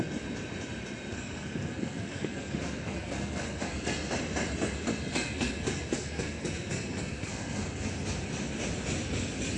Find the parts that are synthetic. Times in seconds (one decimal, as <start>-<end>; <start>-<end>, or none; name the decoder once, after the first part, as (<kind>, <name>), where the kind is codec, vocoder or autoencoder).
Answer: 1.1-4.1 (codec, SNAC); 5.1-7.9